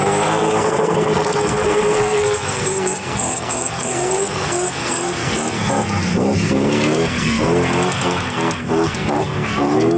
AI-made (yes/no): yes